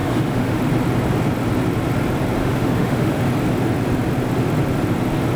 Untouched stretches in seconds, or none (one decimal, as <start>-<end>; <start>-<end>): 0.6-2.4; 3.2-5.4